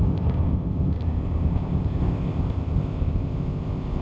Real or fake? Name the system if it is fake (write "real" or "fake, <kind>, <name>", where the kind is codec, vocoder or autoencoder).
fake, codec, ZipCodec